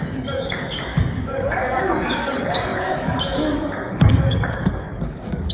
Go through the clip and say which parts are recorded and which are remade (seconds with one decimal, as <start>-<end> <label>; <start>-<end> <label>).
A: 0.0-5.5 remade